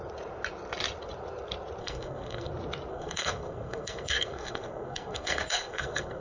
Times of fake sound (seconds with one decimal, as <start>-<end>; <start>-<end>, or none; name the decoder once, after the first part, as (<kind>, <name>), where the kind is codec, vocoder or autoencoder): 1.8-2.5 (codec, SNAC); 2.9-6.2